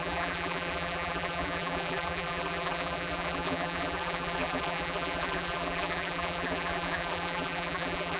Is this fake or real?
fake